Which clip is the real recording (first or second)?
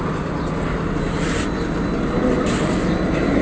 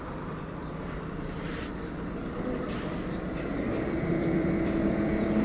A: first